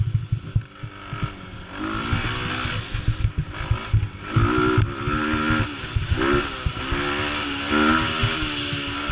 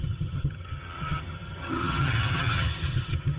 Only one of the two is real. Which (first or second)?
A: first